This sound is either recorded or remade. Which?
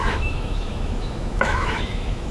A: remade